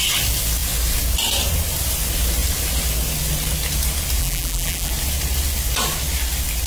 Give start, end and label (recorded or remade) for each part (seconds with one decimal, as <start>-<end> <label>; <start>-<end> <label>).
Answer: 0.0-4.2 recorded; 4.2-4.9 remade; 4.9-6.7 recorded